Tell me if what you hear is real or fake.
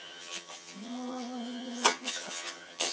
fake